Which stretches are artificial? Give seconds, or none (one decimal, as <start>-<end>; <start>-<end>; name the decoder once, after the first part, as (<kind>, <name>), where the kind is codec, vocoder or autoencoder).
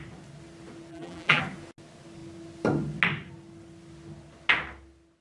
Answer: 0.9-1.4 (vocoder, BigVGAN v2)